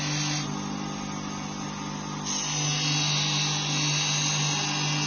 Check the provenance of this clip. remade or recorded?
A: recorded